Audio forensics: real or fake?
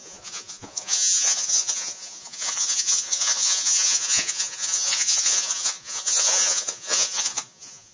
fake